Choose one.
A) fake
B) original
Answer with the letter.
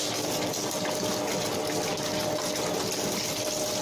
B